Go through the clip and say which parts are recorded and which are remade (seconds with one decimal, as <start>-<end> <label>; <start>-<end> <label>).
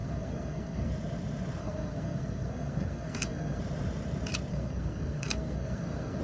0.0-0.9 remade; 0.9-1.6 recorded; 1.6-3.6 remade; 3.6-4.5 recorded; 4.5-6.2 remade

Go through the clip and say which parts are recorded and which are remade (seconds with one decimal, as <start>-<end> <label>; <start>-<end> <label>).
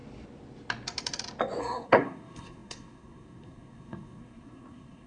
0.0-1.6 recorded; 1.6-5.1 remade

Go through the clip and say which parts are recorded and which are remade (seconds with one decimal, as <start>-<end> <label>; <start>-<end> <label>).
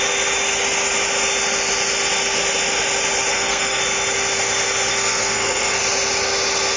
0.0-3.3 recorded; 3.3-3.8 remade; 3.8-4.9 recorded; 4.9-5.8 remade; 5.8-6.8 recorded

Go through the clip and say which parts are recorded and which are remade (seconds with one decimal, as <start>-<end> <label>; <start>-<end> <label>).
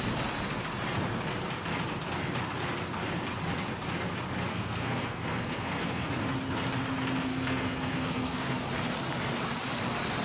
0.0-4.5 recorded; 4.5-6.1 remade; 6.1-7.3 recorded; 7.3-8.6 remade; 8.6-10.2 recorded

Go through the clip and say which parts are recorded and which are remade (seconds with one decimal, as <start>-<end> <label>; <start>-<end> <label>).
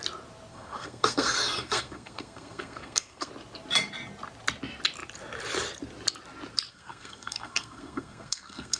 0.0-0.5 recorded; 0.5-3.3 remade; 3.3-6.7 recorded; 6.7-8.8 remade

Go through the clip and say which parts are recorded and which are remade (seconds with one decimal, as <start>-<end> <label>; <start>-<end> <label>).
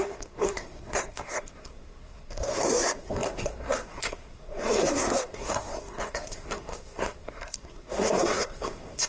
0.0-9.1 remade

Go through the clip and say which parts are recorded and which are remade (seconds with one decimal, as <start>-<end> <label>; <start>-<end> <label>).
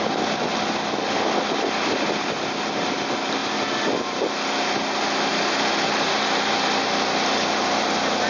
0.0-8.3 recorded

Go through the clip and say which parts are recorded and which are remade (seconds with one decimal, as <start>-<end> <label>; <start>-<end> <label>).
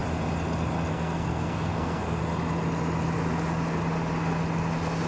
0.0-0.9 recorded; 0.9-2.2 remade; 2.2-5.1 recorded